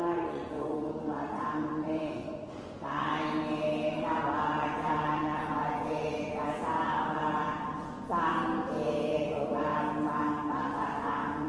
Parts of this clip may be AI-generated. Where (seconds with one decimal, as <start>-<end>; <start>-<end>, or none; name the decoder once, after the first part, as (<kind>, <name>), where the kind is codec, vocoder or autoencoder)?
0.0-3.1 (vocoder, Vocos); 3.9-8.3; 9.1-9.7; 10.5-11.5